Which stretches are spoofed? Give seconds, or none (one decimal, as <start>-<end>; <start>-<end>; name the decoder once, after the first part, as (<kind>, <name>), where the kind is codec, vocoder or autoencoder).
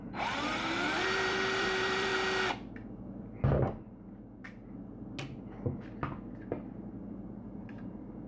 0.0-2.1 (vocoder, BigVGAN v2); 6.7-8.3